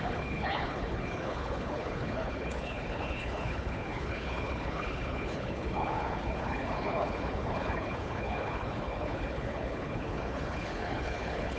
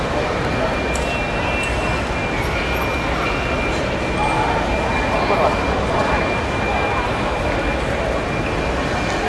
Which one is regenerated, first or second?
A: first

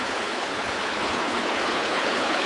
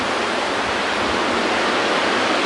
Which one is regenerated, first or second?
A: first